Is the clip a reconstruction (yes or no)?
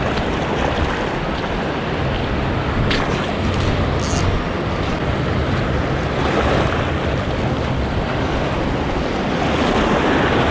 no